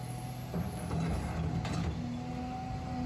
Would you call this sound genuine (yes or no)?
yes